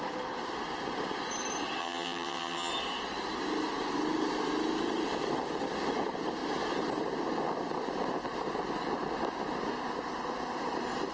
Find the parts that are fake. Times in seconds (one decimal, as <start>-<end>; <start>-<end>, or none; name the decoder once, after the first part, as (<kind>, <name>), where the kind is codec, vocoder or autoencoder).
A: 1.8-2.7 (vocoder, HiFi-GAN)